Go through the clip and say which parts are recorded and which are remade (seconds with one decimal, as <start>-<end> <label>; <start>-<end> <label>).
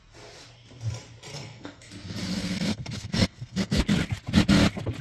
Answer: 0.0-1.3 recorded; 1.3-1.9 remade; 1.9-2.3 recorded; 2.3-3.8 remade; 3.8-5.0 recorded